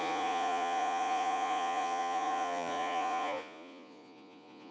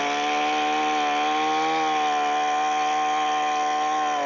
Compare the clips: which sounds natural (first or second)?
second